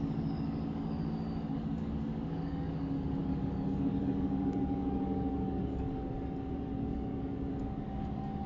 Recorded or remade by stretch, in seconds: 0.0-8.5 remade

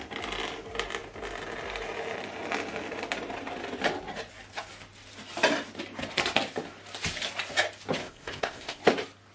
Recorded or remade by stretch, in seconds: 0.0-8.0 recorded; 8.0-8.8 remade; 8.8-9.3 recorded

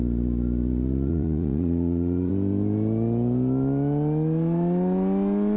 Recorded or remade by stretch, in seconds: 0.0-1.1 recorded; 1.1-2.3 remade; 2.3-5.6 recorded